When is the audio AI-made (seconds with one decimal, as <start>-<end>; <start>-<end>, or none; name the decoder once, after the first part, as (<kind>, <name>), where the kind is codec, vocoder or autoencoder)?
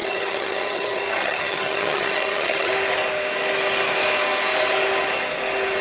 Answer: 0.0-2.7 (vocoder, HiFi-GAN)